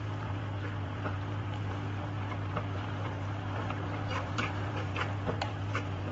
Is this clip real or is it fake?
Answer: fake